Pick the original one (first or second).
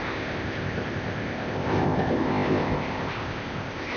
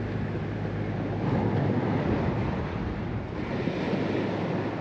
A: second